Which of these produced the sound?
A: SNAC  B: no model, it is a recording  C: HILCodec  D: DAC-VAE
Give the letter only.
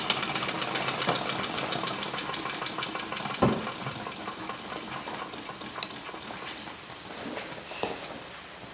B